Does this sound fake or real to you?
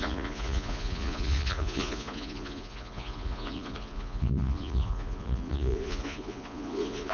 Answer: fake